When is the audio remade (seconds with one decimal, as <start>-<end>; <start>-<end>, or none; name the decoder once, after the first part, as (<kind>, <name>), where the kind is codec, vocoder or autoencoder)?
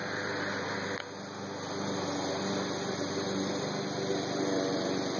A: none